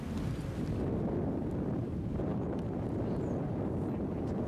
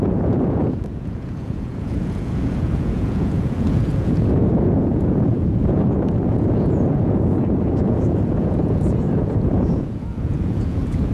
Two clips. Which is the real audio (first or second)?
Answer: first